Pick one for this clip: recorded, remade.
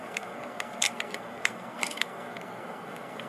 remade